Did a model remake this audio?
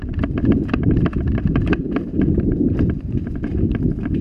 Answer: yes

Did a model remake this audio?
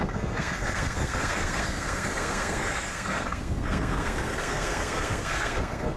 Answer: yes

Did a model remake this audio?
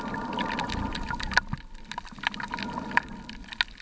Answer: no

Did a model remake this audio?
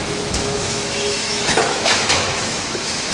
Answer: yes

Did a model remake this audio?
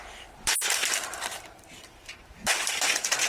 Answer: yes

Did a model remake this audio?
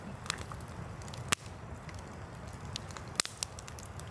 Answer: no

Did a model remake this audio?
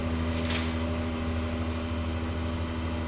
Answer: no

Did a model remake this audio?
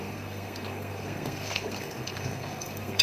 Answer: yes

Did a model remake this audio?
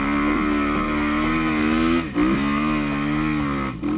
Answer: no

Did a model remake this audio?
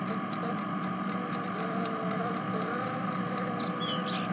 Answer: no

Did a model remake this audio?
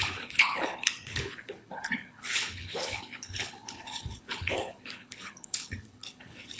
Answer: yes